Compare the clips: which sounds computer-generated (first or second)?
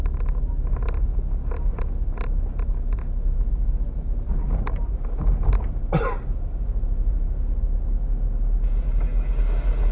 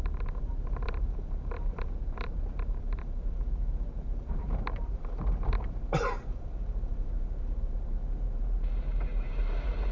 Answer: second